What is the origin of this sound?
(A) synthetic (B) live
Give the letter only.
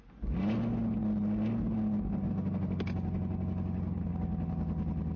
B